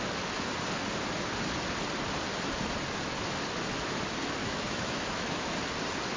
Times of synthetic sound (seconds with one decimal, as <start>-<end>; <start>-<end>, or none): 4.4-5.5